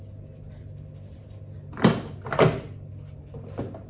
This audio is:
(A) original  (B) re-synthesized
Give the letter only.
A